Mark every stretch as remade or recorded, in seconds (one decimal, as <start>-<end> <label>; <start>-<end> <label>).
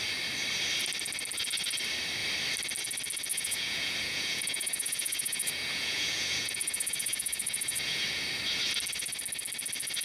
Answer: 0.0-3.3 recorded; 3.3-8.0 remade; 8.0-10.0 recorded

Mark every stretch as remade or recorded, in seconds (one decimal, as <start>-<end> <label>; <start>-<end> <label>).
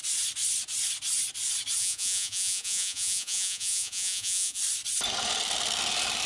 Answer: 0.0-1.8 recorded; 1.8-4.6 remade; 4.6-6.3 recorded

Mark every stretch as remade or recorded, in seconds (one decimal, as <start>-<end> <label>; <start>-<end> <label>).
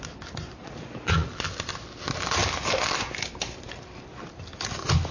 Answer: 0.0-0.6 recorded; 0.6-1.3 remade; 1.3-5.1 recorded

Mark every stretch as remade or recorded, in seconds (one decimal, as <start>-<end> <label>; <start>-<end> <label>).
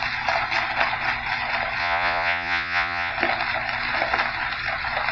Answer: 0.0-1.8 recorded; 1.8-3.1 remade; 3.1-5.1 recorded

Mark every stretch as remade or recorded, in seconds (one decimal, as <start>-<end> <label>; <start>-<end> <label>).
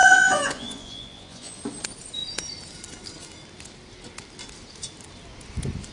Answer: 0.0-1.6 remade; 1.6-5.9 recorded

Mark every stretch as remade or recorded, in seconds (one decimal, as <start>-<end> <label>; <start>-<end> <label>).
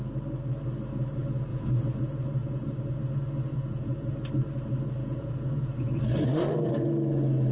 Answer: 0.0-1.5 recorded; 1.5-2.0 remade; 2.0-2.4 recorded; 2.4-3.0 remade; 3.0-3.5 recorded; 3.5-4.1 remade; 4.1-5.0 recorded; 5.0-6.0 remade; 6.0-7.5 recorded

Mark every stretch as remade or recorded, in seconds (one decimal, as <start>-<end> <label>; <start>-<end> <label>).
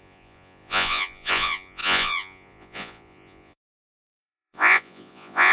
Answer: 0.0-5.5 remade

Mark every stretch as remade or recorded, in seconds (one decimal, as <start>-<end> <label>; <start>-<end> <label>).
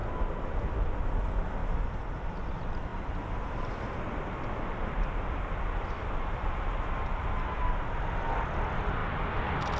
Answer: 0.0-9.8 recorded